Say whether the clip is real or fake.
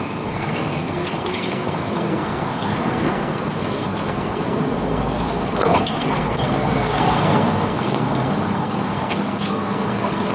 fake